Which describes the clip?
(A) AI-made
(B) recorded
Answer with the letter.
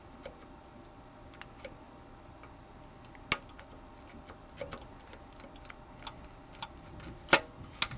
B